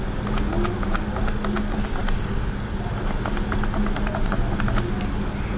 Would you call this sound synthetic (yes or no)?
no